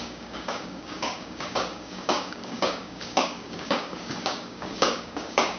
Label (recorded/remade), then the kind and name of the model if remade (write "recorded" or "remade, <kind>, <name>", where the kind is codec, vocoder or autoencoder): remade, codec, DAC